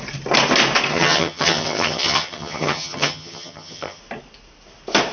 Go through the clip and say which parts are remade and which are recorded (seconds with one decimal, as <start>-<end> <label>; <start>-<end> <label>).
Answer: 0.0-0.9 recorded; 0.9-4.0 remade; 4.0-5.1 recorded